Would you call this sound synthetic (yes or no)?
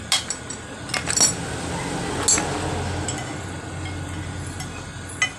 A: no